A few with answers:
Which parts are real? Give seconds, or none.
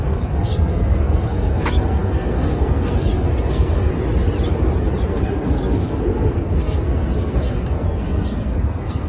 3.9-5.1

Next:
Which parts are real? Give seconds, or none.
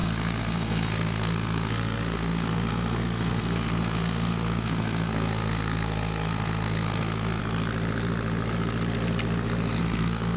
7.4-9.8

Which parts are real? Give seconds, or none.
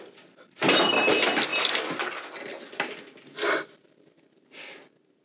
0.0-5.2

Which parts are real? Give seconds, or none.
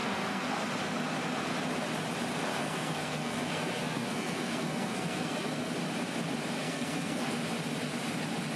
0.5-2.6; 5.7-6.6; 7.3-8.6